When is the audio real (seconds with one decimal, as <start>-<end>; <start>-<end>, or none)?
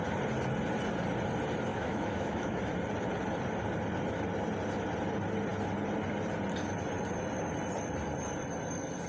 0.0-1.7; 2.6-9.1